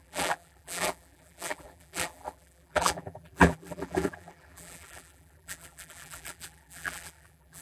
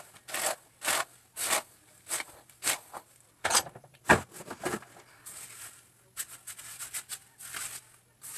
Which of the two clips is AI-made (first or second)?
first